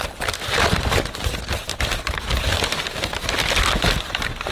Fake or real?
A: real